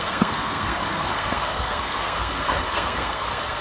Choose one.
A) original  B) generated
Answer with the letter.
B